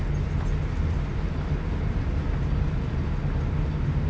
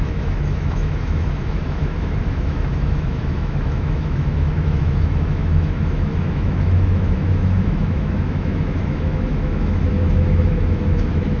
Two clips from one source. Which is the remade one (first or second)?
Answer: second